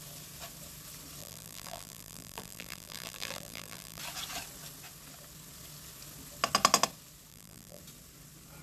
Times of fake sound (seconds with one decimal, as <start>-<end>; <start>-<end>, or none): 1.2-4.0; 7.3-7.8